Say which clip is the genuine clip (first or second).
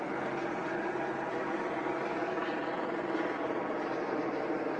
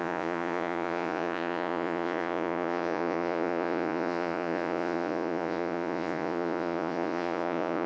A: first